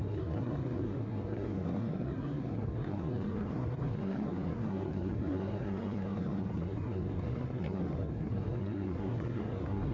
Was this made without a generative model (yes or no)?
no